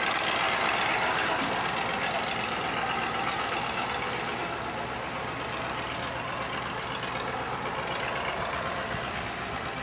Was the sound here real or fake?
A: real